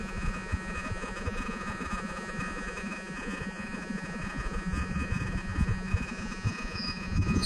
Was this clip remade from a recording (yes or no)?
yes